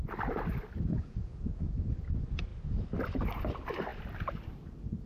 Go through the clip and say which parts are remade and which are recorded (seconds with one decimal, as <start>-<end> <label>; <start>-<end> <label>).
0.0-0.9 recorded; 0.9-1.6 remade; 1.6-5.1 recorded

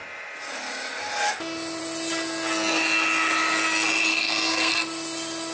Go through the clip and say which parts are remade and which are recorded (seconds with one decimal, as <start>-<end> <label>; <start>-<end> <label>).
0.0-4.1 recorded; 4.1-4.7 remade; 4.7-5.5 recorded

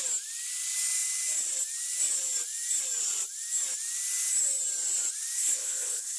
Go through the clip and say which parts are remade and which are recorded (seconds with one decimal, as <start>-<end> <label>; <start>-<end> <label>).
0.0-5.4 recorded; 5.4-6.2 remade